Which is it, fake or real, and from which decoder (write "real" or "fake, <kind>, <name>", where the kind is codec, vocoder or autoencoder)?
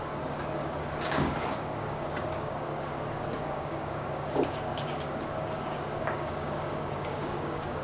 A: fake, codec, DAC